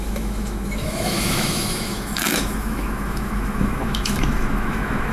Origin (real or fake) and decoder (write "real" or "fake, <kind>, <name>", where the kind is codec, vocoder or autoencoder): fake, autoencoder, DAC-VAE